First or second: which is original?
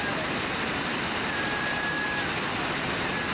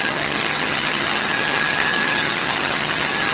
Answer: first